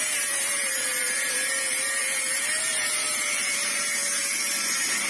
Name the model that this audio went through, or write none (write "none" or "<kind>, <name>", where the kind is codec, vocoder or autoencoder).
vocoder, BigVGAN v2